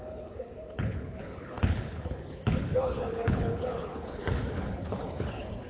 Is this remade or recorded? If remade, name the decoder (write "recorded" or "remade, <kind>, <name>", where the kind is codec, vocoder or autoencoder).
remade, codec, HILCodec